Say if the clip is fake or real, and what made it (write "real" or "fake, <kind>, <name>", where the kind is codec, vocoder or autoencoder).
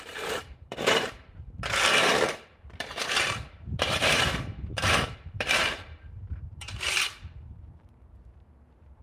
fake, vocoder, BigVGAN v2